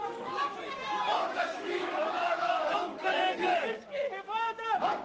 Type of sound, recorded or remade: remade